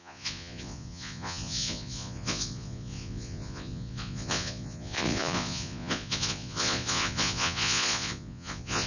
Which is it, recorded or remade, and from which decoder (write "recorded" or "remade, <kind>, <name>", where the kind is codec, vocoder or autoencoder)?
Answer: remade, vocoder, Vocos